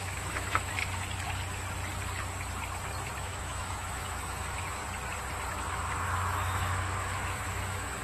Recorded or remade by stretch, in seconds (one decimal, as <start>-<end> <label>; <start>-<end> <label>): 0.0-0.8 remade; 0.8-3.2 recorded; 3.2-4.8 remade; 4.8-5.5 recorded; 5.5-8.0 remade